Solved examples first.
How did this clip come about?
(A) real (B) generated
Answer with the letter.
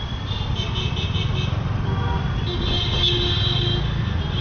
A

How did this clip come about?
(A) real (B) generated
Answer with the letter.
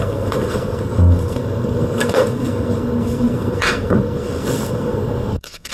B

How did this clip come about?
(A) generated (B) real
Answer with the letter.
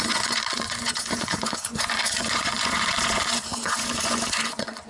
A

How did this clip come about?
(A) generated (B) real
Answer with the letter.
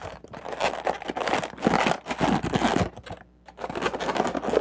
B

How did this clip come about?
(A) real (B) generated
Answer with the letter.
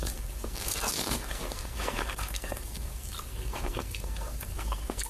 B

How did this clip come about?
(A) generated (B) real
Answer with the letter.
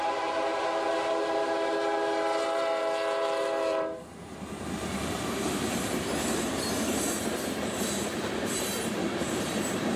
A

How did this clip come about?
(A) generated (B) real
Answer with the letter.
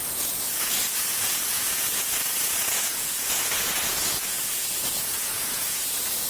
A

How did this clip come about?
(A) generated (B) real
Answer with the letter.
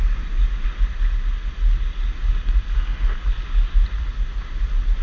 B